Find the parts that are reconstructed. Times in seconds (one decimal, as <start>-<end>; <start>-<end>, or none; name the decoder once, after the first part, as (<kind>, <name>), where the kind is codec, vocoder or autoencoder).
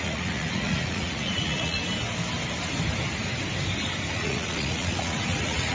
0.0-1.8 (vocoder, Vocos); 4.1-5.7